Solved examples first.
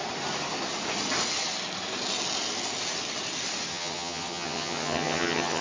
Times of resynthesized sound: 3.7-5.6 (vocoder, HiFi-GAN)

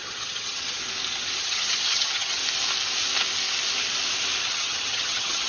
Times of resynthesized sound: 0.0-0.8 (vocoder, HiFi-GAN); 1.4-2.4; 4.4-5.5

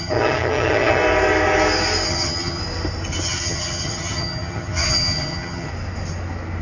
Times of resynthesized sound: 0.0-1.0 (vocoder, HiFi-GAN); 2.1-2.6; 3.2-5.7